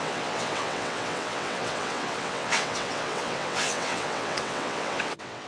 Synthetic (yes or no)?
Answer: yes